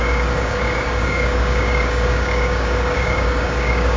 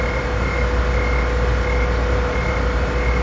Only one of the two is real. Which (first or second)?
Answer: second